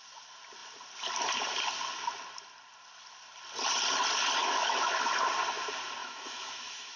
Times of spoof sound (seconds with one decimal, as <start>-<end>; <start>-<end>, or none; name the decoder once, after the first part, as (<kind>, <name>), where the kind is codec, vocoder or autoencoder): 4.4-5.1 (autoencoder, DAC-VAE); 6.0-7.0